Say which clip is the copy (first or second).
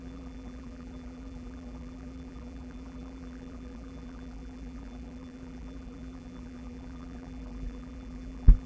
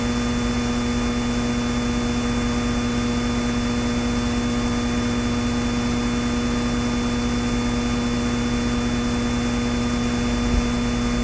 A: first